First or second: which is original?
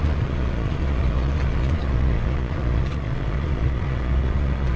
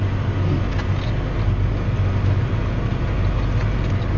second